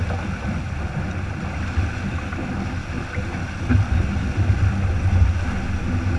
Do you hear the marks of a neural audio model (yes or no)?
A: no